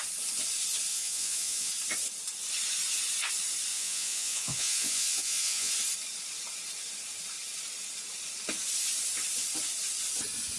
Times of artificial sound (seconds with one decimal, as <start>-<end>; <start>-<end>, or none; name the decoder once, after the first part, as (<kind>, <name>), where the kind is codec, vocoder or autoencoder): 0.9-1.7 (vocoder, Vocos); 3.7-5.7